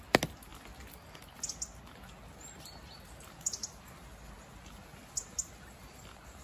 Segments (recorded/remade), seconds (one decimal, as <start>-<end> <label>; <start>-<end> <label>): 0.0-6.4 recorded